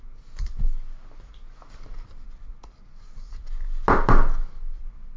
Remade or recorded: recorded